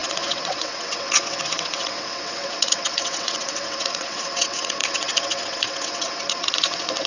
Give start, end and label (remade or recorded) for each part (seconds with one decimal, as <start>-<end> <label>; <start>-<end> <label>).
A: 0.0-7.1 remade